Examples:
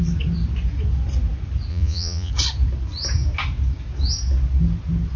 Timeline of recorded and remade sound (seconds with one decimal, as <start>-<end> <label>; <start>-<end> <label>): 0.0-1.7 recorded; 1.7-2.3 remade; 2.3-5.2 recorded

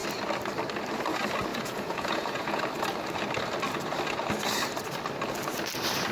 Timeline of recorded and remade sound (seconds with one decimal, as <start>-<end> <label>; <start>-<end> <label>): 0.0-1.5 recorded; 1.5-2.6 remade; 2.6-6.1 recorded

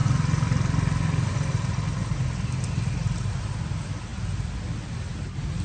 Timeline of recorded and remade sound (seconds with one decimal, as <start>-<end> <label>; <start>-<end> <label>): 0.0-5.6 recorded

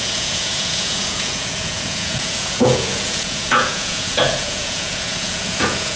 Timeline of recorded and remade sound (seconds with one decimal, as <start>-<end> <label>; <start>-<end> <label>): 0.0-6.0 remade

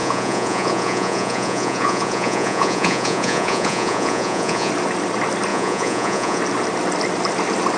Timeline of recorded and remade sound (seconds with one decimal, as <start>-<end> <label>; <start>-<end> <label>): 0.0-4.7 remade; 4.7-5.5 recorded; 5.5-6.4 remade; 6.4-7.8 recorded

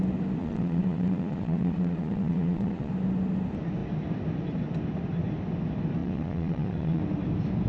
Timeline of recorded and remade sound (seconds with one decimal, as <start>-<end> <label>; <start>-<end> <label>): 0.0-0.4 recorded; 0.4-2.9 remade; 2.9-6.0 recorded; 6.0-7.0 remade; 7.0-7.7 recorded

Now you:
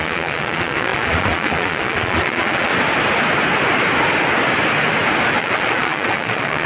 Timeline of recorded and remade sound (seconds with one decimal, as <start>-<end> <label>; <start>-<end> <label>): 0.0-2.7 remade; 2.7-5.4 recorded; 5.4-6.7 remade

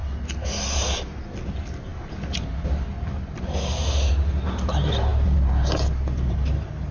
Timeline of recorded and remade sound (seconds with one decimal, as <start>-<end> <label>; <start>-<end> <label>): 0.0-6.9 recorded